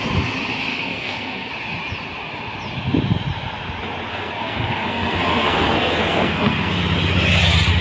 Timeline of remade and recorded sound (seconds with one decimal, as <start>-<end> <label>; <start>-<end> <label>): 0.0-0.7 recorded; 0.7-1.5 remade; 1.5-4.1 recorded; 4.1-6.7 remade; 6.7-7.8 recorded